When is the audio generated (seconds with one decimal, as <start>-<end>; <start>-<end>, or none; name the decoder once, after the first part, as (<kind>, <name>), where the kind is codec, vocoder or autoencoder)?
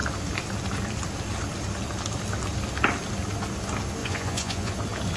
4.0-4.7 (vocoder, Vocos)